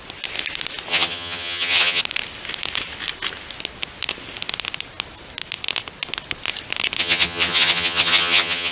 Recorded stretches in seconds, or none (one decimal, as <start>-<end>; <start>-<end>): 0.0-0.9; 2.0-7.0

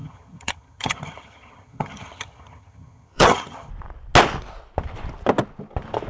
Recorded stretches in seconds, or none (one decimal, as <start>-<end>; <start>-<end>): 3.7-6.1